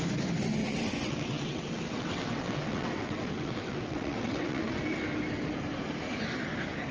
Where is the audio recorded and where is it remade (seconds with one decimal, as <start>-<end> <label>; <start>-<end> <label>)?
0.0-0.6 recorded; 0.6-4.7 remade; 4.7-6.9 recorded